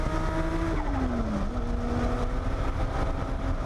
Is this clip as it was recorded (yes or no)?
yes